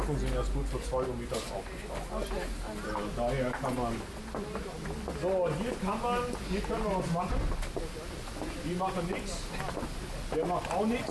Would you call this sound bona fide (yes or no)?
yes